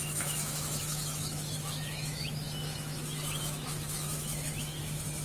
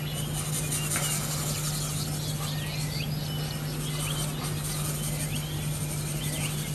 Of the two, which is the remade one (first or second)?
first